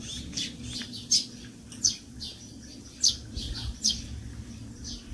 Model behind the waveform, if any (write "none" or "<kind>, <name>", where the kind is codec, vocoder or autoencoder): none